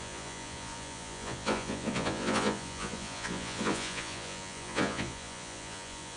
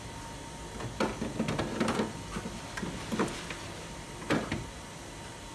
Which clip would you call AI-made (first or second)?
first